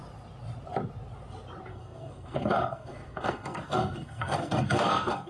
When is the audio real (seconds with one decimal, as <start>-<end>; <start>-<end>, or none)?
0.0-1.7